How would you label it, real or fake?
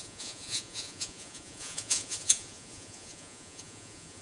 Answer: fake